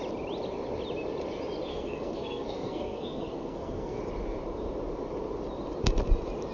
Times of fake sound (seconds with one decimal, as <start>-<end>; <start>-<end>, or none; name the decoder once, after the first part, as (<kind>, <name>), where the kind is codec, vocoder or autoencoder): 1.7-4.0 (codec, SNAC)